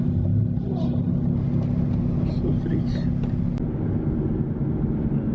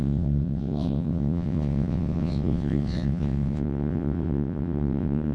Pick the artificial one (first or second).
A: second